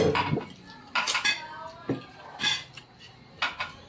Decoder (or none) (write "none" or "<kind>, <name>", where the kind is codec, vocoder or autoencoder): none